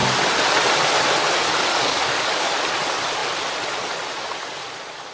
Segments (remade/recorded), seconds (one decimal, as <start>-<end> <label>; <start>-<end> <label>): 0.0-1.7 recorded; 1.7-2.5 remade; 2.5-5.1 recorded